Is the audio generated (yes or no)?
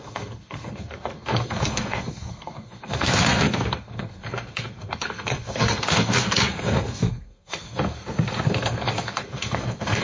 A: yes